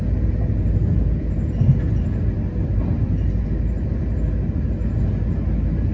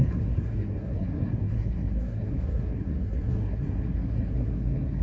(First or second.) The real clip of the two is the first